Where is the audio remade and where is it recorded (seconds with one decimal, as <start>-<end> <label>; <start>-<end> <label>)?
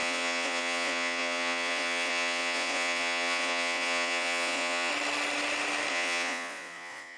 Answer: 0.0-4.9 remade; 4.9-5.9 recorded; 5.9-7.2 remade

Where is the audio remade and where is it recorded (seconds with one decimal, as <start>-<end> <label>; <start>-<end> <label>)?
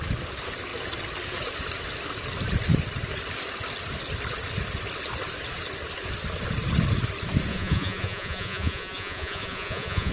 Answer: 0.0-7.5 recorded; 7.5-10.1 remade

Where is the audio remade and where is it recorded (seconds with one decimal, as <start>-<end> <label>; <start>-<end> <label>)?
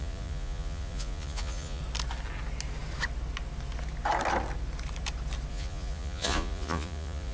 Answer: 0.0-1.8 remade; 1.8-5.5 recorded; 5.5-7.3 remade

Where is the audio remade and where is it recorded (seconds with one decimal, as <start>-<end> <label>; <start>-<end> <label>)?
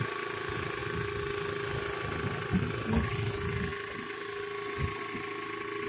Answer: 0.0-5.9 recorded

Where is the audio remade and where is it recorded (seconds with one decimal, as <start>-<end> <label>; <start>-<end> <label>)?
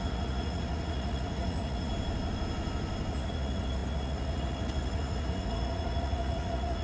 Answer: 0.0-1.9 remade; 1.9-3.1 recorded; 3.1-6.8 remade